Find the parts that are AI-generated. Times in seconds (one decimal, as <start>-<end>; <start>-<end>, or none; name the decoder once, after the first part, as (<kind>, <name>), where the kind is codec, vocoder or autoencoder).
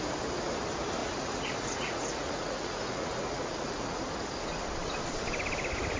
1.0-4.0 (vocoder, Vocos)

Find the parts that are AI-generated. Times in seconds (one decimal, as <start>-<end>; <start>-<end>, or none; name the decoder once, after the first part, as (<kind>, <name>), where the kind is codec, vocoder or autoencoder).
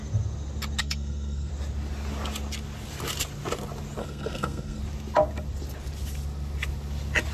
0.8-1.5 (codec, SNAC); 4.0-4.8